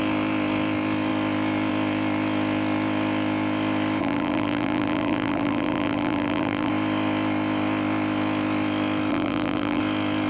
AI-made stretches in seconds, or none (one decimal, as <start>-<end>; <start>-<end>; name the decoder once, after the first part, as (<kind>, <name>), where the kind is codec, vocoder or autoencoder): 4.0-6.7 (vocoder, BigVGAN v2); 9.1-9.8